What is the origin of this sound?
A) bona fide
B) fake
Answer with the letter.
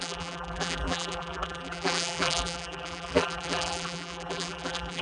B